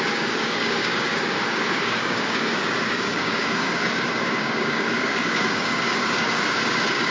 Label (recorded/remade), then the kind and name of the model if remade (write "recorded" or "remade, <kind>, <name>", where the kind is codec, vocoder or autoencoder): remade, codec, DAC